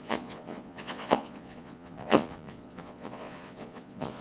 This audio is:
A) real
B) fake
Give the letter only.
B